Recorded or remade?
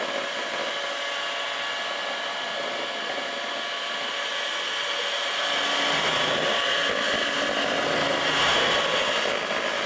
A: recorded